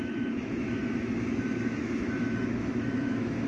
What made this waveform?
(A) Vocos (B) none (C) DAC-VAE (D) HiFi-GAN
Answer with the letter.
C